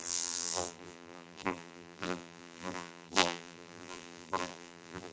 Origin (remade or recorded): remade